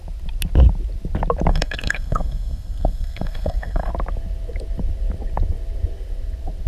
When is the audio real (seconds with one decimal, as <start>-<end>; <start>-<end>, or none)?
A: 0.0-1.5; 3.9-6.7

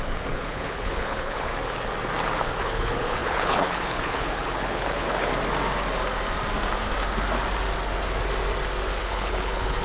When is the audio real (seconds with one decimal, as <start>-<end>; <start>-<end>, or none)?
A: 1.5-2.6; 5.3-9.0

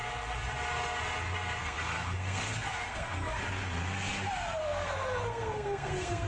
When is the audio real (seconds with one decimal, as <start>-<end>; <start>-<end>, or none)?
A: 0.0-1.6; 3.4-4.6

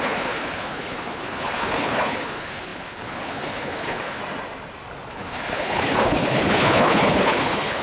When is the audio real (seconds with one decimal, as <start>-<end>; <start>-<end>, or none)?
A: 4.2-5.1